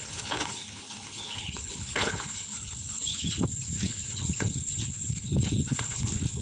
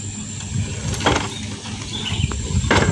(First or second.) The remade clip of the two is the first